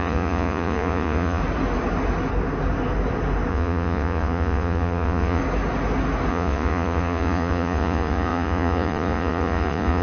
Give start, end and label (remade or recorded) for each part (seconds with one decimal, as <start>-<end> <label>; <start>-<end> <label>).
0.0-1.4 remade; 1.4-3.5 recorded; 3.5-5.4 remade; 5.4-6.3 recorded; 6.3-10.0 remade